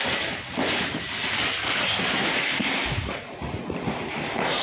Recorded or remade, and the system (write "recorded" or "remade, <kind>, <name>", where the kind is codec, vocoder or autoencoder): recorded